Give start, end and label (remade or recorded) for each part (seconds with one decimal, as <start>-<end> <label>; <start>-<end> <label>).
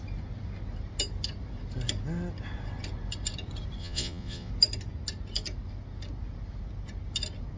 0.0-3.8 recorded; 3.8-4.5 remade; 4.5-7.6 recorded